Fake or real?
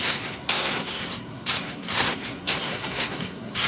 fake